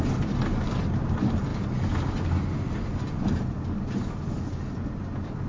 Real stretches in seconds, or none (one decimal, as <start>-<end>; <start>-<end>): 0.0-5.5